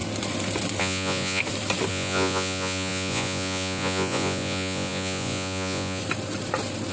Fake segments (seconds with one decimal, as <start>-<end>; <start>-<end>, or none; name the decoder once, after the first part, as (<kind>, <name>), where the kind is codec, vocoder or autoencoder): 0.8-1.4 (vocoder, Vocos); 1.9-6.0